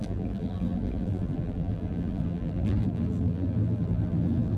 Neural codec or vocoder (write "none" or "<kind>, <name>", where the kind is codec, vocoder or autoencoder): vocoder, BigVGAN v2